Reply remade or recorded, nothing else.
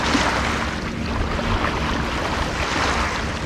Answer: recorded